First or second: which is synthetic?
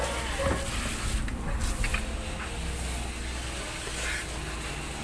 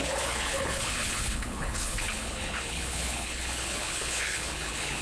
second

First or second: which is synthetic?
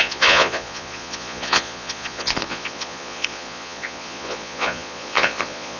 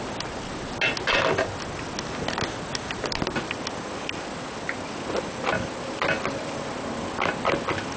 first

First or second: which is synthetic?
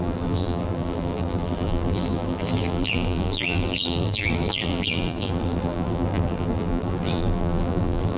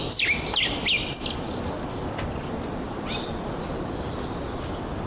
first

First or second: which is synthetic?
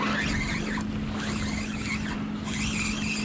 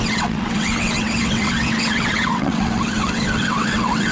second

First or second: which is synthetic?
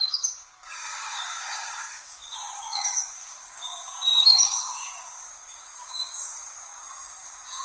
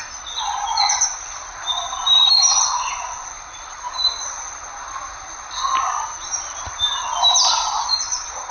first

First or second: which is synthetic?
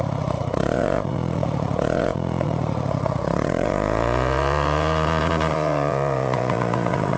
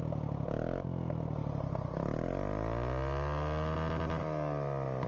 first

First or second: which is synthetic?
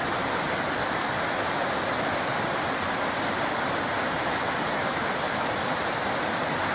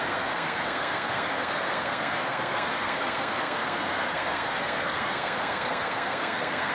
second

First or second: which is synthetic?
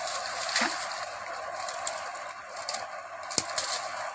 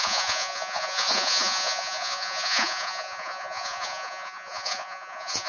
second